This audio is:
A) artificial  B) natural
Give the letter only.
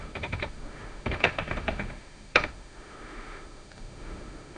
A